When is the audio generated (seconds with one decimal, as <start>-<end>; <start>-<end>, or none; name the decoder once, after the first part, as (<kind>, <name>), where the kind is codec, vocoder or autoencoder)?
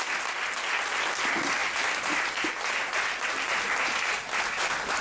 none